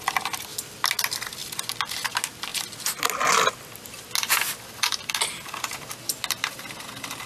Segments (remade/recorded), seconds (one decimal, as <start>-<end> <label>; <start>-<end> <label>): 0.0-7.3 recorded